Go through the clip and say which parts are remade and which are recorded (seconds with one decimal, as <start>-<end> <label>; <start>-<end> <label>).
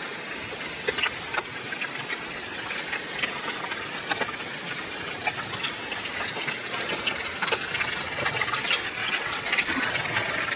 0.0-9.0 recorded; 9.0-9.6 remade; 9.6-10.6 recorded